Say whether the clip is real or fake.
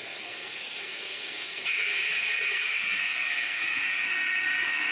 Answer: fake